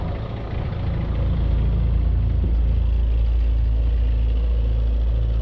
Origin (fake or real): real